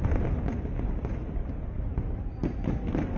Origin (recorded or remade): recorded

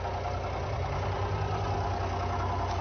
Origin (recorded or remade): recorded